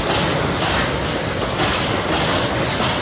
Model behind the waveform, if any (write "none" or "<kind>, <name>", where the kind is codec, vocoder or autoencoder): none